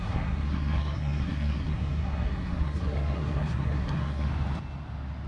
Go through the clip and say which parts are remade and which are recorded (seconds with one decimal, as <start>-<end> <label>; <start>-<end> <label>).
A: 0.0-4.3 remade; 4.3-5.3 recorded